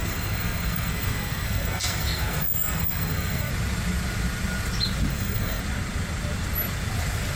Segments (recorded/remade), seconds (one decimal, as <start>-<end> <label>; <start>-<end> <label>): 0.0-3.5 remade; 3.5-5.1 recorded; 5.1-5.6 remade; 5.6-7.4 recorded